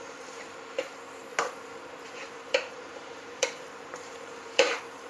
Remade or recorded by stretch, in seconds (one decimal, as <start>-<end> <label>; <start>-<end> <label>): 0.0-1.2 remade; 1.2-2.0 recorded; 2.0-5.1 remade